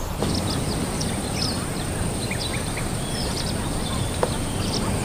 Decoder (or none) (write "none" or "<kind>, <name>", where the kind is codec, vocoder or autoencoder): vocoder, BigVGAN v2